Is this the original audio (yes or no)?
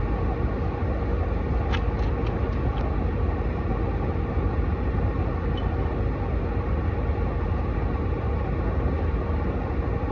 yes